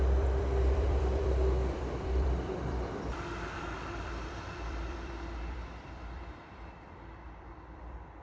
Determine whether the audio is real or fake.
fake